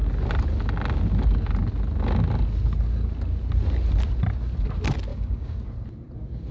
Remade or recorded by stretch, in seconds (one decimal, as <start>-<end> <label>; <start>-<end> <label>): 0.0-5.1 recorded; 5.1-5.6 remade; 5.6-6.5 recorded